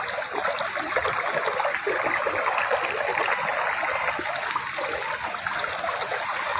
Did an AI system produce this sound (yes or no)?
no